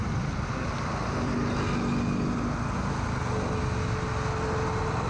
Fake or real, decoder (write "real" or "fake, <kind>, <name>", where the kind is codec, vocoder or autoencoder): real